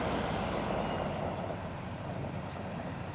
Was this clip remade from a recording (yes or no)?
no